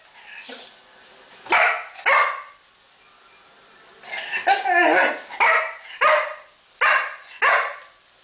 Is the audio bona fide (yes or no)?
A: yes